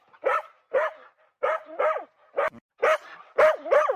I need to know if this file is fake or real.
fake